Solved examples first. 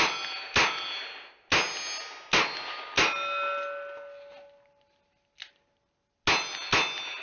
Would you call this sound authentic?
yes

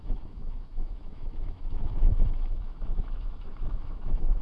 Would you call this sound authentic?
no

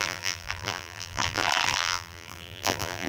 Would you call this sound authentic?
no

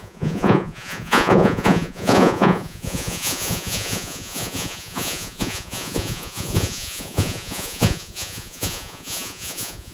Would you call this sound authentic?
no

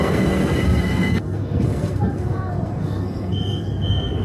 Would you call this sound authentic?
no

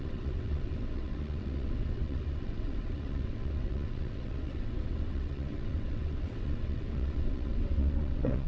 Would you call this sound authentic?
no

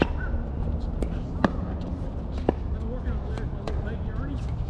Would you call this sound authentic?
yes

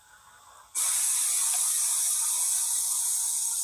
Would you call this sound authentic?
yes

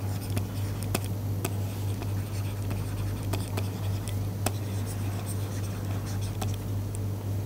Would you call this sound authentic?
yes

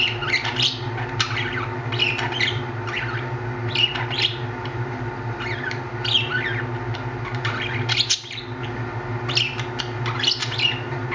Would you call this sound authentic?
no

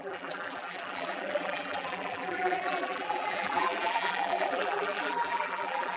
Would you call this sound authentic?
no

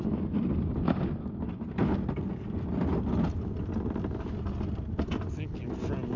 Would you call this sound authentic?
yes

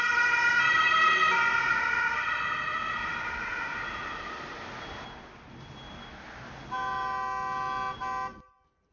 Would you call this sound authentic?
yes